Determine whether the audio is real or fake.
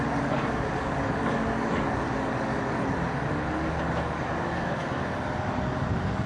fake